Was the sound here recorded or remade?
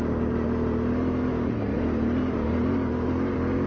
recorded